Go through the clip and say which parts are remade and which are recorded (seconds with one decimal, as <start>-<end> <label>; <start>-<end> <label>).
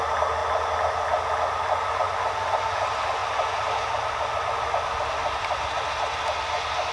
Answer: 0.0-6.9 recorded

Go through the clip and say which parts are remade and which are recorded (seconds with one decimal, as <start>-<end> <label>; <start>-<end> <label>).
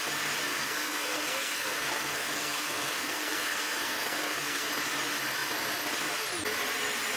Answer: 0.0-0.5 recorded; 0.5-4.7 remade; 4.7-7.2 recorded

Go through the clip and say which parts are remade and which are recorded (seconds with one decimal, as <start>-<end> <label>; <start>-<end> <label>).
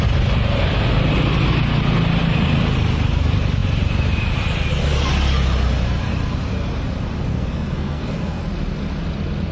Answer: 0.0-7.3 recorded; 7.3-8.4 remade; 8.4-9.5 recorded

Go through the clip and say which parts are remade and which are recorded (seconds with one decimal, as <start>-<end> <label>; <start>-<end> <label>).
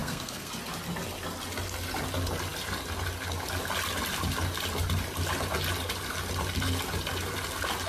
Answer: 0.0-0.5 remade; 0.5-7.9 recorded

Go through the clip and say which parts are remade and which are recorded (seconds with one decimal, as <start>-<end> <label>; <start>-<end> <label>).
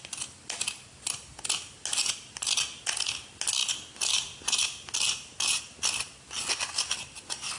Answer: 0.0-7.6 recorded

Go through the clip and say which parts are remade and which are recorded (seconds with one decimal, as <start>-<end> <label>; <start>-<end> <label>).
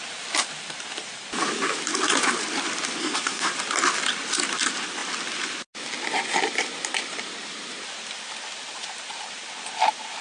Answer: 0.0-3.0 recorded; 3.0-3.5 remade; 3.5-10.2 recorded